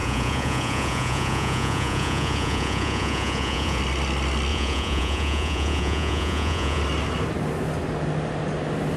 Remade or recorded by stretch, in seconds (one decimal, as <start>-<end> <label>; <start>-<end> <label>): 0.0-3.8 remade; 3.8-4.5 recorded; 4.5-6.8 remade; 6.8-9.0 recorded